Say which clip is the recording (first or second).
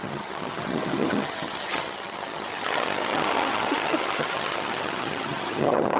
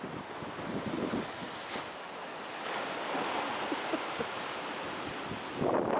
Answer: second